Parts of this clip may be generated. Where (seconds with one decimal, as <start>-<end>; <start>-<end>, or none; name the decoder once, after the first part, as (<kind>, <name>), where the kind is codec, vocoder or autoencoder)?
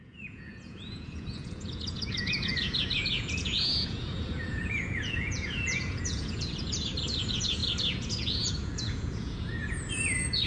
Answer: 0.0-10.5 (vocoder, Vocos)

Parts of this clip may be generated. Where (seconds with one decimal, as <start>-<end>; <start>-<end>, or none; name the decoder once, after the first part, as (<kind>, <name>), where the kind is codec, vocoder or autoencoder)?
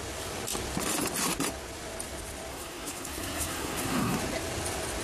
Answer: 2.5-4.2 (codec, SNAC)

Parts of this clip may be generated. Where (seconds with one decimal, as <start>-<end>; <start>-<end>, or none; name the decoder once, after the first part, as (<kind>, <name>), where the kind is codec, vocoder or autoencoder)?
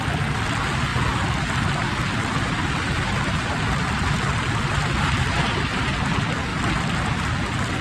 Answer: none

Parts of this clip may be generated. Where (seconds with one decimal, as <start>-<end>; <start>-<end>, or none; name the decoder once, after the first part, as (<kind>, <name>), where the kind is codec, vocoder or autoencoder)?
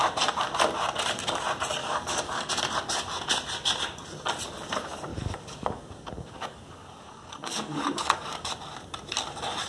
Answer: 1.8-2.5 (codec, DAC); 5.1-8.5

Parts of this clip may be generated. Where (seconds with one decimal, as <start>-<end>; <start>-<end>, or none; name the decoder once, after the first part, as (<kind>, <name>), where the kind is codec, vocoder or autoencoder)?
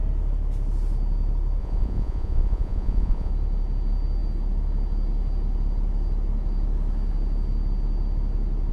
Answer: 1.6-3.3 (vocoder, Vocos)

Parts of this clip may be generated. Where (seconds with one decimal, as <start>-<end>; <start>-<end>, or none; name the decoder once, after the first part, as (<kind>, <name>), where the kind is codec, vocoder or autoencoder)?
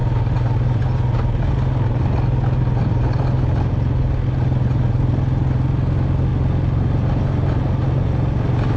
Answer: none